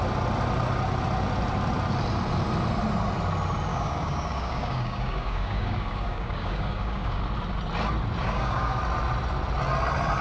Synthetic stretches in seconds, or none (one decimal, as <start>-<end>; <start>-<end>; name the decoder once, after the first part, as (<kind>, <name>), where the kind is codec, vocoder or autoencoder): 3.7-7.2 (codec, DAC); 8.2-8.8